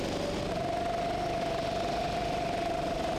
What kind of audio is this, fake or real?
real